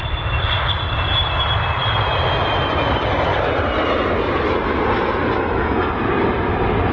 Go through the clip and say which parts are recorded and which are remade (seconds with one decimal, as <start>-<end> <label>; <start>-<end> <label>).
0.0-6.9 recorded